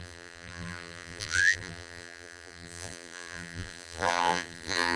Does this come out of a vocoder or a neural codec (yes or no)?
yes